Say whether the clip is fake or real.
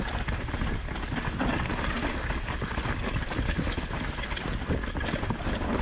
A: real